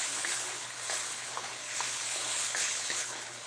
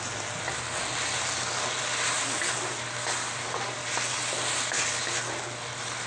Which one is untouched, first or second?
second